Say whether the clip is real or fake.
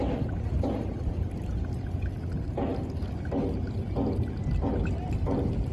real